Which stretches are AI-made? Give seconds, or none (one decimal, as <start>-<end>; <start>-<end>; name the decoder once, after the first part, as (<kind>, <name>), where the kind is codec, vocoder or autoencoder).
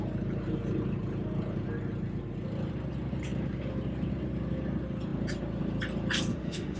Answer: 6.3-6.8 (autoencoder, DAC-VAE)